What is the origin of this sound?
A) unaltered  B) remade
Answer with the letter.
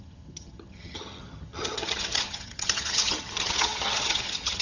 B